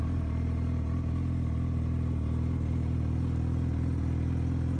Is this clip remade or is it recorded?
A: recorded